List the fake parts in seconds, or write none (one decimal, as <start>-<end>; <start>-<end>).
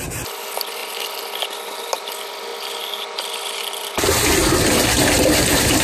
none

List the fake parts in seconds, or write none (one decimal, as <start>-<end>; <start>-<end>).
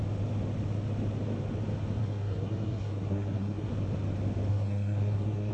2.0-3.7; 4.5-5.5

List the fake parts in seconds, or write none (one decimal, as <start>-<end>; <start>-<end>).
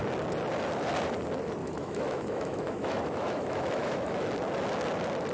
1.6-4.3